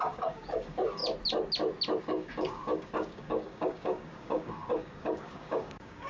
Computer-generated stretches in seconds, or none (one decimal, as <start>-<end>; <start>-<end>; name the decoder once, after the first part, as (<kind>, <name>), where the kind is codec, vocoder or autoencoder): 0.0-1.0 (codec, DAC); 2.0-6.1